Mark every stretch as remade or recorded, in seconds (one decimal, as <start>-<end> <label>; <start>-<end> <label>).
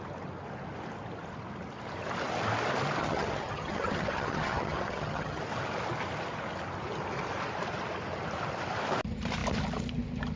0.0-3.0 recorded; 3.0-5.4 remade; 5.4-10.4 recorded